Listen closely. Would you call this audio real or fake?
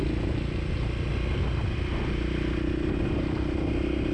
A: real